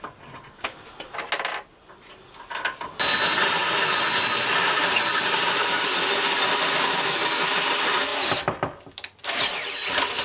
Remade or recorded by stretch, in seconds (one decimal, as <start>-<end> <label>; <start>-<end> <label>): 0.0-10.2 recorded